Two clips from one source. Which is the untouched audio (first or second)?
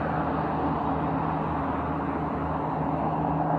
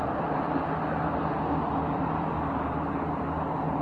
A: first